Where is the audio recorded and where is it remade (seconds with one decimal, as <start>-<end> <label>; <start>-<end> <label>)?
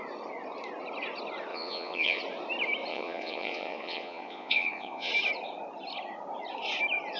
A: 0.0-1.5 recorded; 1.5-2.2 remade; 2.2-2.9 recorded; 2.9-5.1 remade; 5.1-7.2 recorded